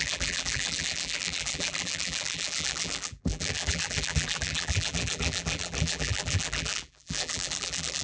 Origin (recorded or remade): remade